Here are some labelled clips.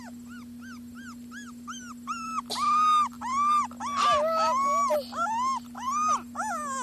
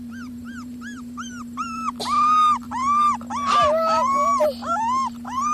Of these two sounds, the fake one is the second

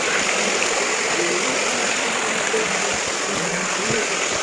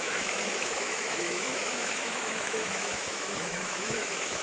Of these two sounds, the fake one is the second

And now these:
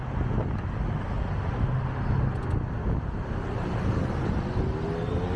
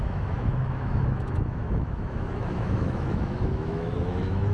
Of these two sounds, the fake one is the second